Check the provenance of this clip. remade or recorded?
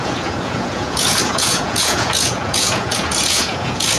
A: remade